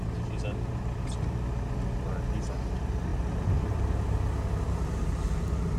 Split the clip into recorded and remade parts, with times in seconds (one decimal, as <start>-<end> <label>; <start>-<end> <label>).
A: 0.0-3.1 recorded; 3.1-3.8 remade; 3.8-5.8 recorded

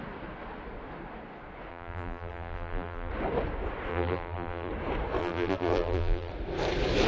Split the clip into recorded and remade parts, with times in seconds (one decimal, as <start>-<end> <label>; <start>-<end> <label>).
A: 0.0-1.7 recorded; 1.7-3.1 remade; 3.1-3.9 recorded; 3.9-4.7 remade; 4.7-5.2 recorded; 5.2-6.3 remade; 6.3-7.1 recorded

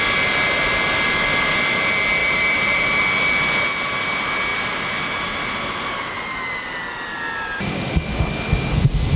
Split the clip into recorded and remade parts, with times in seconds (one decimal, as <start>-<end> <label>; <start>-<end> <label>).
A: 0.0-2.2 recorded; 2.2-3.0 remade; 3.0-9.2 recorded

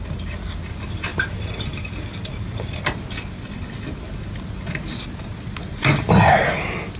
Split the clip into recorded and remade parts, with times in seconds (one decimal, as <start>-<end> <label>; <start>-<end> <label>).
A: 0.0-1.1 recorded; 1.1-2.8 remade; 2.8-7.0 recorded